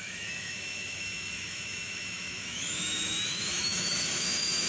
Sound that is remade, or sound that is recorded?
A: remade